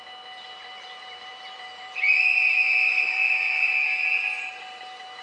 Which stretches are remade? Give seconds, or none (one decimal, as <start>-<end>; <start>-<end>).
0.6-3.7